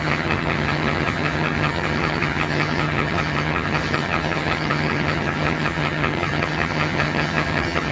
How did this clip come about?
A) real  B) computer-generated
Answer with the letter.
B